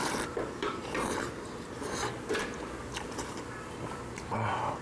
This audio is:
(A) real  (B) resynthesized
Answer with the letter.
A